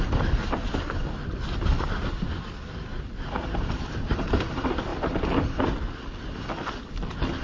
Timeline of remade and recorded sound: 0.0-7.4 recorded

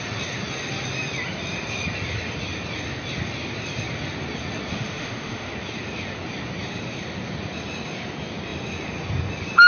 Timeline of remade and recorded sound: 0.0-4.7 recorded; 4.7-5.5 remade; 5.5-9.7 recorded